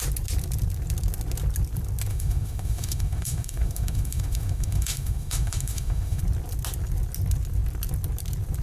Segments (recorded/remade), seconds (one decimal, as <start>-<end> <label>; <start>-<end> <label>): 0.0-2.1 recorded; 2.1-6.2 remade; 6.2-8.6 recorded